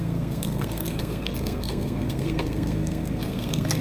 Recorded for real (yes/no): no